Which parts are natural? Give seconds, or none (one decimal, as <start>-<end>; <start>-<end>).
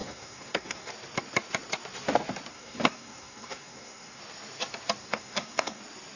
0.9-2.5; 4.2-5.0; 5.8-6.2